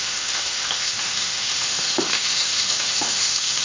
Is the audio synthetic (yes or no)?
yes